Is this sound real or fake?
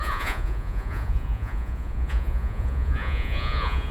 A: fake